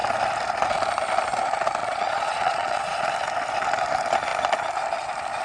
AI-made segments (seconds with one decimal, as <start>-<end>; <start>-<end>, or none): 1.8-3.0

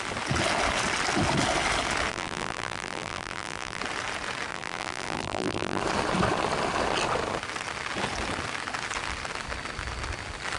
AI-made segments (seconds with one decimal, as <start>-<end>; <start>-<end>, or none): 2.1-3.8; 4.5-5.8

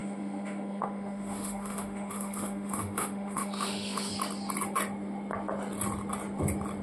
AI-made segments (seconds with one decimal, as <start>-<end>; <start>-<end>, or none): 0.0-4.1

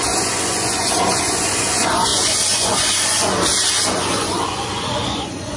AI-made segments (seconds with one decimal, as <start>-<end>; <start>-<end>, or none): 0.0-3.3; 4.0-5.6

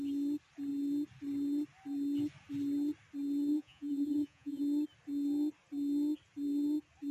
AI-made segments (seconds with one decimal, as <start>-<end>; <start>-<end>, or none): 3.5-4.6